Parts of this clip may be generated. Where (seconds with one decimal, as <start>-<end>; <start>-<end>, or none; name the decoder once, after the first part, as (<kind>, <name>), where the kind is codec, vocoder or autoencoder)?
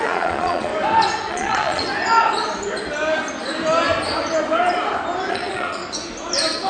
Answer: 0.0-0.7 (vocoder, Vocos); 1.3-1.9; 5.3-5.8